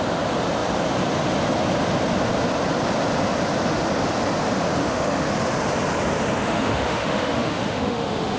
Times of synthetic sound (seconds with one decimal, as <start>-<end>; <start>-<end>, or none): 4.8-5.3; 6.4-8.4